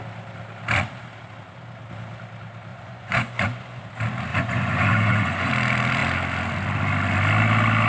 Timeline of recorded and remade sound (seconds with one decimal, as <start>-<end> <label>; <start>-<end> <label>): 0.0-2.7 recorded; 2.7-3.8 remade; 3.8-4.3 recorded; 4.3-5.5 remade; 5.5-7.9 recorded